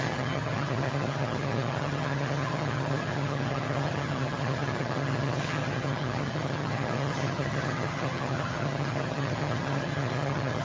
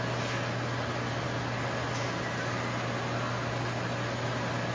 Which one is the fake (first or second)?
first